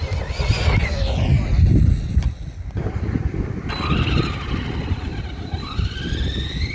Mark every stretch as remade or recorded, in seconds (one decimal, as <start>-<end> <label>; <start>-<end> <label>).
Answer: 0.0-6.7 recorded

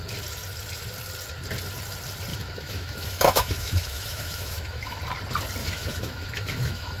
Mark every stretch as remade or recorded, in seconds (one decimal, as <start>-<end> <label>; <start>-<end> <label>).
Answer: 0.0-2.3 recorded; 2.3-5.0 remade; 5.0-5.6 recorded; 5.6-7.0 remade

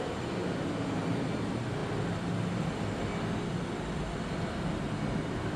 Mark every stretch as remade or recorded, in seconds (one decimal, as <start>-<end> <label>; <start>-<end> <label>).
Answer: 0.0-5.6 recorded

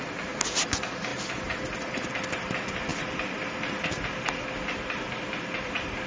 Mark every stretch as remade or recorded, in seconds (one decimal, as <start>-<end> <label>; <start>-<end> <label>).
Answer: 0.0-6.1 recorded

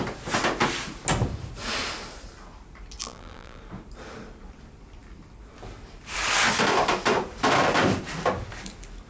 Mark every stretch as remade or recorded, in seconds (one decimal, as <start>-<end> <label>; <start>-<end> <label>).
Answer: 0.0-3.0 recorded; 3.0-3.6 remade; 3.6-9.1 recorded